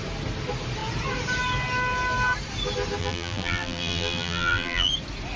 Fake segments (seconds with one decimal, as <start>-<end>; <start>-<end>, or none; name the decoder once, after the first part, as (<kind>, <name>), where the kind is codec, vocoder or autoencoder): 3.0-4.9 (vocoder, BigVGAN v2)